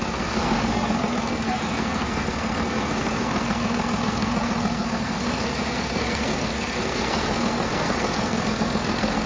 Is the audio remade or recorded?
remade